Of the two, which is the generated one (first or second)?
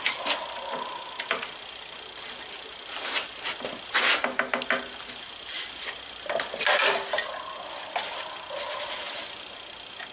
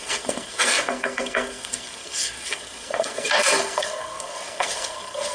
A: second